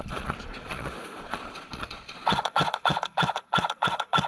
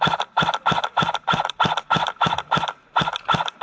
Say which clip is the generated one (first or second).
first